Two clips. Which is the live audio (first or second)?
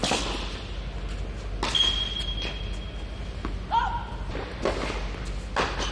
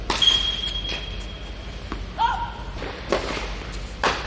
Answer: first